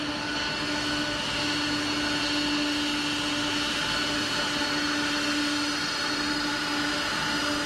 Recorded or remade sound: recorded